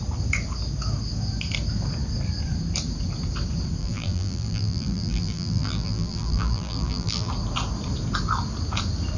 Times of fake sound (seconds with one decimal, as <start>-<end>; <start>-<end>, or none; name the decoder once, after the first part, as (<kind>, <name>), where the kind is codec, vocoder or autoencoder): 3.8-7.3 (vocoder, BigVGAN v2)